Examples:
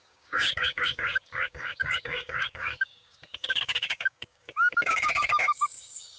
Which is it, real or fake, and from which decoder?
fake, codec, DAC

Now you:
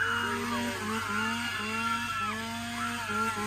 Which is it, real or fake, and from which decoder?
real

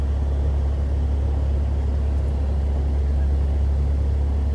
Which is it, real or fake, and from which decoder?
real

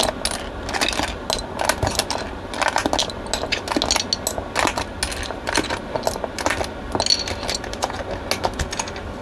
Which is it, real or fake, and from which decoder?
real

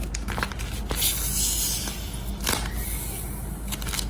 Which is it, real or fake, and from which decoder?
real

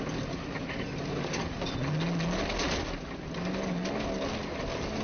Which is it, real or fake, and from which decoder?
real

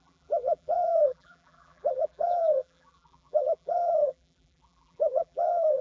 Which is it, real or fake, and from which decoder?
fake, vocoder, BigVGAN v2